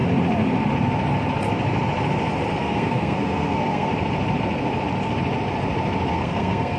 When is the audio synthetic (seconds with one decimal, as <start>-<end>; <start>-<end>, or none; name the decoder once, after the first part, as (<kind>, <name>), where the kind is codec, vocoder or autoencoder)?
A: 2.6-3.9 (codec, SNAC); 6.1-6.8